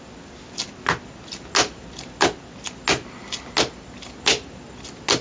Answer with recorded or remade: recorded